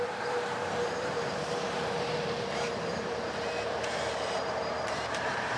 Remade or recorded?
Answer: remade